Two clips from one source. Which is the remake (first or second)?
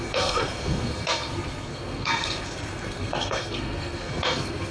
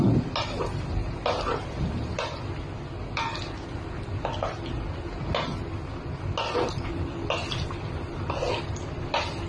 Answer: first